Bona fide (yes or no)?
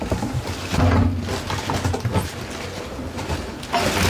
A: yes